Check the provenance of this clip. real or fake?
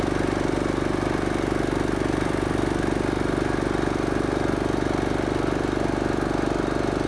real